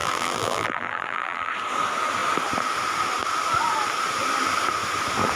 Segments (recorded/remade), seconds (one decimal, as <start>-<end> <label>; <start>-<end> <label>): 0.0-1.5 remade; 1.5-5.4 recorded

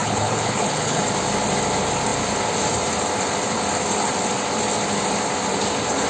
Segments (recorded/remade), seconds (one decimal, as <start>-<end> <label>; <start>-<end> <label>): 0.0-1.0 remade; 1.0-6.1 recorded

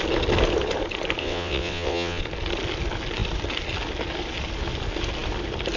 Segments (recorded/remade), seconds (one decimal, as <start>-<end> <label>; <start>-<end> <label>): 0.0-1.2 recorded; 1.2-2.2 remade; 2.2-5.8 recorded